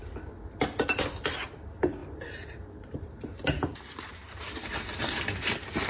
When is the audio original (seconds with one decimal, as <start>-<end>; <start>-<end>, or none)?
0.0-2.0; 5.1-5.9